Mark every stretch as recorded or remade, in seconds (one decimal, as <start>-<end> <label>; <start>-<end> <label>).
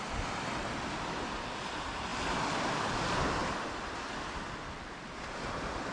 0.0-5.9 recorded